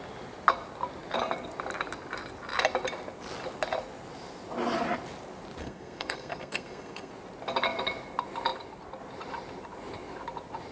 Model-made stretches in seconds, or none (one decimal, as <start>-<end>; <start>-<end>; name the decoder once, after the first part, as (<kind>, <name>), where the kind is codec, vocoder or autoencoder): 5.6-7.1 (codec, SNAC)